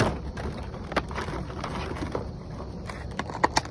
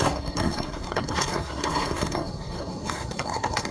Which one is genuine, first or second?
first